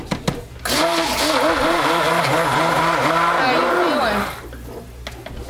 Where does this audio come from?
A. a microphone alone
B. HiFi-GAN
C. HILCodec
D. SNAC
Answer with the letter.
A